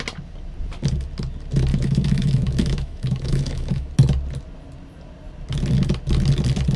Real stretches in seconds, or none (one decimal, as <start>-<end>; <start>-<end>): 0.0-1.7; 3.9-6.8